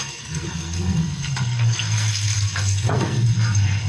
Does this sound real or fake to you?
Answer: fake